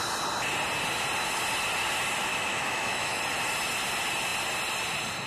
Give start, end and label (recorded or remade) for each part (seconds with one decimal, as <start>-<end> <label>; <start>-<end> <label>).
0.0-2.3 recorded; 2.3-3.2 remade; 3.2-5.3 recorded